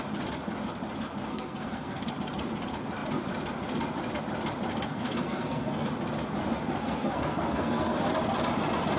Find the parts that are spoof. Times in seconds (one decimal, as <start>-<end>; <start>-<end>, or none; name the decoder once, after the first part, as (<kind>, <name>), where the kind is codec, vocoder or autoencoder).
1.3-2.1 (codec, SNAC); 4.7-5.9; 6.8-8.1